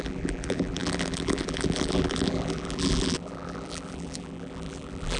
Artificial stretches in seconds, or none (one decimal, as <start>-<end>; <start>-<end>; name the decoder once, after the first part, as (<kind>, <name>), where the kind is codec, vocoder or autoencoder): 0.0-5.2 (vocoder, BigVGAN v2)